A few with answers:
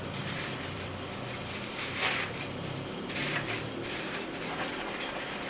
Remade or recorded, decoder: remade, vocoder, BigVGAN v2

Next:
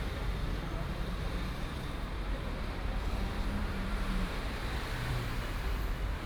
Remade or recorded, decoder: remade, vocoder, BigVGAN v2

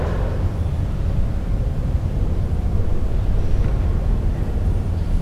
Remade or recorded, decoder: recorded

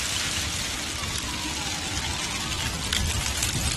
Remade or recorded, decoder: recorded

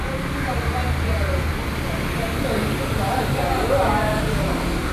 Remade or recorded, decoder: recorded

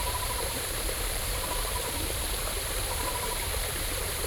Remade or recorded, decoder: remade, vocoder, BigVGAN v2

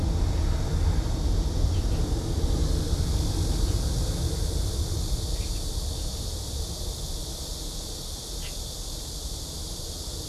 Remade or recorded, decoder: recorded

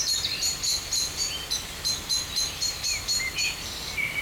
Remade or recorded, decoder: remade, vocoder, BigVGAN v2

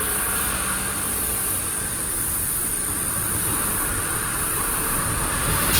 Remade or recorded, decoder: remade, vocoder, BigVGAN v2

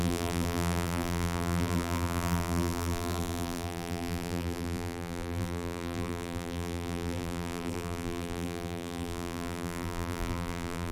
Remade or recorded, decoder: remade, vocoder, BigVGAN v2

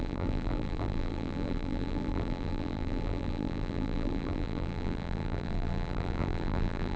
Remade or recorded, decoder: remade, vocoder, BigVGAN v2